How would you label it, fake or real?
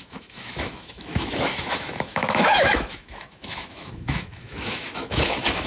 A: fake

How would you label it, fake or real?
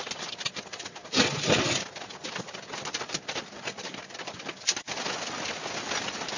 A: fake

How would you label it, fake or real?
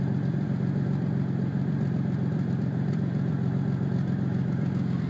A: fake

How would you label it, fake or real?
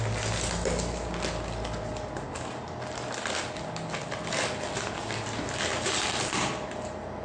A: real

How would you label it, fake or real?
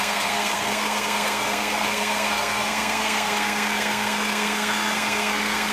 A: fake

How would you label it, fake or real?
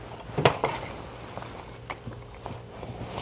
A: real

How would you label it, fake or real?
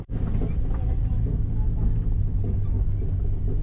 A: real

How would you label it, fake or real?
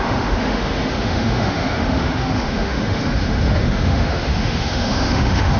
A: fake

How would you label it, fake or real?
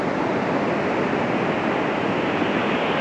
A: real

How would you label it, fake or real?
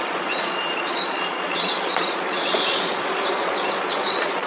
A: fake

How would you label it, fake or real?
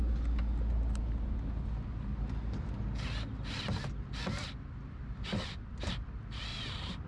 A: real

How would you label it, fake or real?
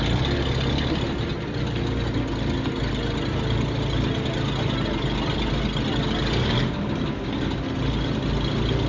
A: real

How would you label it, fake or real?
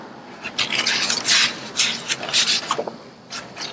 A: real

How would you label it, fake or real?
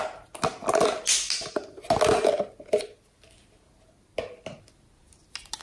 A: real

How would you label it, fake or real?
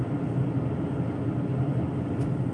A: real